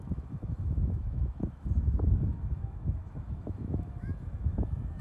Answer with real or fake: fake